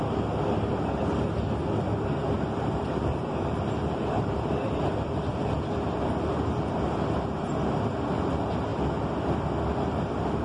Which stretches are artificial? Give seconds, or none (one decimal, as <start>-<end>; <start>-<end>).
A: 0.0-8.7; 9.8-10.4